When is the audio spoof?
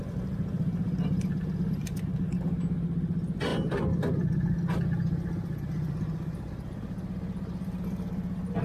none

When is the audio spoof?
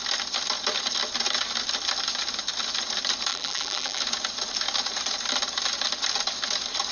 3.3-4.0 (vocoder, BigVGAN v2)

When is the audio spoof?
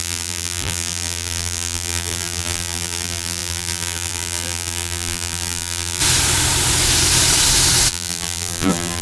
0.0-6.0 (vocoder, BigVGAN v2); 7.9-9.0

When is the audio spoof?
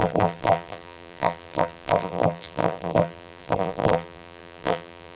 0.0-5.2 (vocoder, BigVGAN v2)